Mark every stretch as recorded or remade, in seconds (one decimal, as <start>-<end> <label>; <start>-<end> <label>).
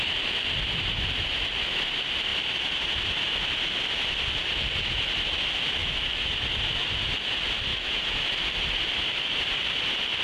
0.0-5.8 recorded; 5.8-6.3 remade; 6.3-7.7 recorded; 7.7-8.4 remade; 8.4-10.2 recorded